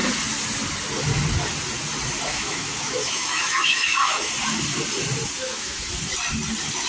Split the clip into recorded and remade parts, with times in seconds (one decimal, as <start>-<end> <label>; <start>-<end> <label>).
0.0-2.3 recorded; 2.3-4.3 remade; 4.3-5.4 recorded; 5.4-5.9 remade; 5.9-6.9 recorded